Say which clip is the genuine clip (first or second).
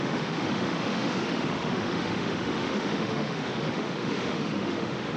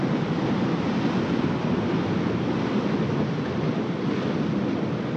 second